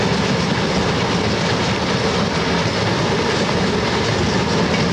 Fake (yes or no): no